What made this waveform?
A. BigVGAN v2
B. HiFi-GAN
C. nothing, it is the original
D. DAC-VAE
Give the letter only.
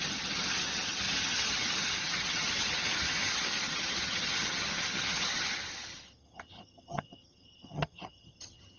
B